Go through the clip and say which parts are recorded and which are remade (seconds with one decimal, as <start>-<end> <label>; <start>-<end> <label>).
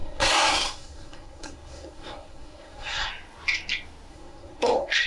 0.0-3.1 remade; 3.1-4.1 recorded; 4.1-5.1 remade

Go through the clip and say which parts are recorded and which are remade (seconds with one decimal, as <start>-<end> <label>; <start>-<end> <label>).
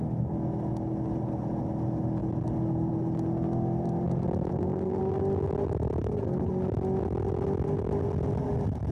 0.0-4.5 recorded; 4.5-5.0 remade; 5.0-6.0 recorded; 6.0-6.5 remade; 6.5-8.9 recorded